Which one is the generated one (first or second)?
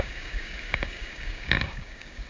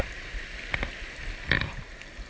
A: first